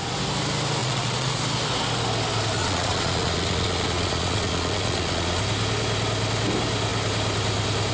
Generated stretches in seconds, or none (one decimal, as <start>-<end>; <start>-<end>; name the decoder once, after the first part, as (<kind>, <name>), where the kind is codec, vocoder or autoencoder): 0.8-1.4 (vocoder, Vocos); 2.6-5.4